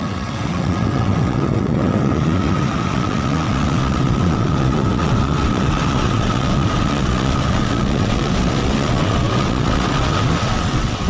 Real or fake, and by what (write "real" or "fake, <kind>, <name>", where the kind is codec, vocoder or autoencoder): fake, vocoder, WaveNeXt